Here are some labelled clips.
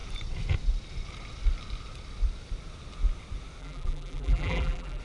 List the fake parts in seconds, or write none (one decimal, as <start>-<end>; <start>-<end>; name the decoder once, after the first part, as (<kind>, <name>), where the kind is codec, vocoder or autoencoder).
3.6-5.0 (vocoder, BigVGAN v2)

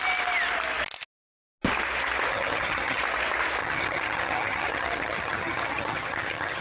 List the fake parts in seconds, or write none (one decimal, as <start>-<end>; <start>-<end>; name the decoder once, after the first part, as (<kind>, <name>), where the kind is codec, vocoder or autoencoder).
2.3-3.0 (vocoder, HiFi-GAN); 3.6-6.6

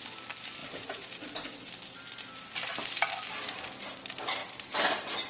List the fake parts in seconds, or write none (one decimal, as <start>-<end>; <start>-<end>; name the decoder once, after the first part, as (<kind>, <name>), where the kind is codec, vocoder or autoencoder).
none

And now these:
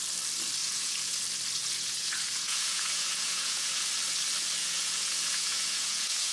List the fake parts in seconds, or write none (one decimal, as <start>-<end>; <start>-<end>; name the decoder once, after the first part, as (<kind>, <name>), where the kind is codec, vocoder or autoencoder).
0.6-1.2 (vocoder, Vocos); 1.6-3.9; 4.6-6.3

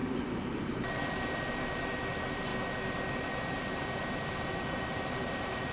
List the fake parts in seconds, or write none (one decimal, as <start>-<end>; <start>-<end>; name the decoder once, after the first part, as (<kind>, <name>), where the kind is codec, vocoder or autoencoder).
0.0-2.5 (vocoder, BigVGAN v2); 3.1-5.7

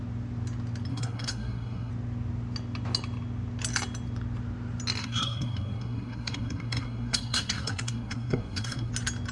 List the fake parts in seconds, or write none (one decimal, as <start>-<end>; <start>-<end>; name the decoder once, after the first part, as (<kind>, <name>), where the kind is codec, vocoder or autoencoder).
0.9-1.9 (codec, SNAC); 5.0-8.9

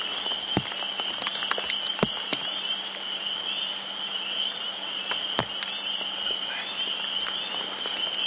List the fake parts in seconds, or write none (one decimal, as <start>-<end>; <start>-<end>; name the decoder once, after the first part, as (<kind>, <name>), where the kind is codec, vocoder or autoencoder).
none

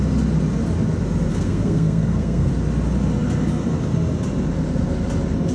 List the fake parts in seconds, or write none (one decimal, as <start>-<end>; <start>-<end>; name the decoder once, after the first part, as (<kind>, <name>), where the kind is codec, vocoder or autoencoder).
1.3-2.5 (codec, SNAC)